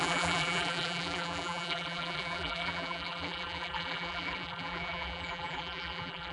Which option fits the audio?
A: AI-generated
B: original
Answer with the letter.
A